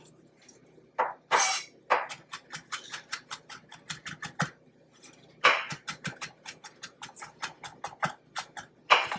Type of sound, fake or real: real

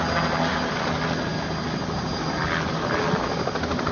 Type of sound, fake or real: real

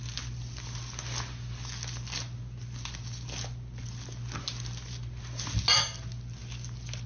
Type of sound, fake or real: real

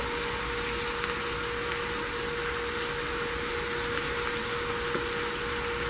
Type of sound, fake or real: real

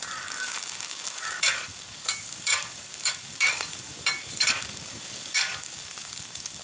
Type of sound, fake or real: fake